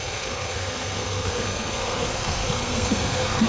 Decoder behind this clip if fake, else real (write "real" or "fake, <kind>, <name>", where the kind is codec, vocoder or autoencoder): fake, codec, SNAC